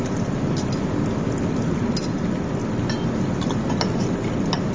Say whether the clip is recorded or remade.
recorded